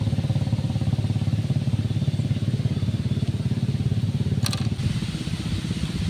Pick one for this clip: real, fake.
real